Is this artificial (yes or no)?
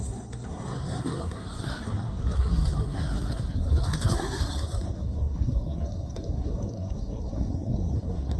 yes